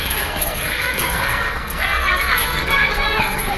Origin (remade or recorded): remade